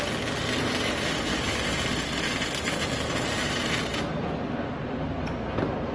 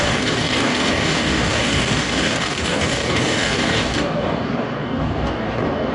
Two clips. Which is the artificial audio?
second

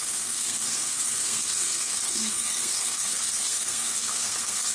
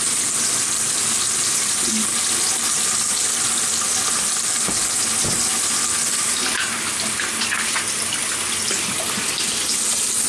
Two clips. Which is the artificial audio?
first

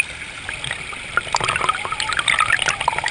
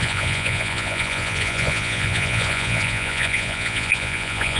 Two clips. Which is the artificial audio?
second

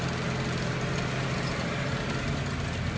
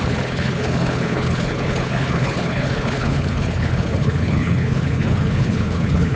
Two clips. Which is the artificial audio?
second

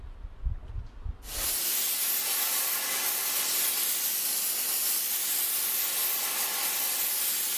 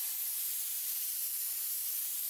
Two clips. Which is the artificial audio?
second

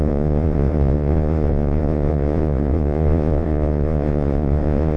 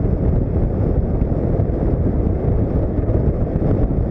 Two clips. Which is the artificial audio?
first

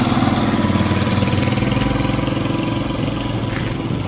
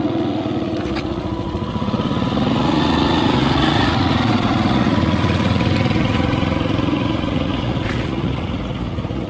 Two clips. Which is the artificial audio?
second